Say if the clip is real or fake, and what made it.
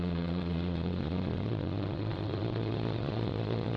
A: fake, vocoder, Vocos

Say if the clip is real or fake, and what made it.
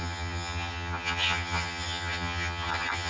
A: fake, vocoder, HiFi-GAN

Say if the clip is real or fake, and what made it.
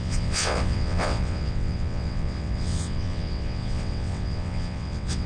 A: fake, vocoder, WaveNeXt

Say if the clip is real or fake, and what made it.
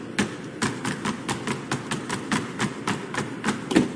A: real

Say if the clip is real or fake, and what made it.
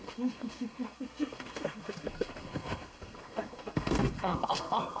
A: fake, codec, SNAC